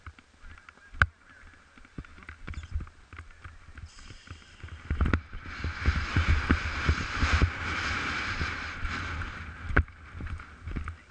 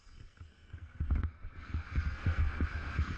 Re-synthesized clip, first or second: second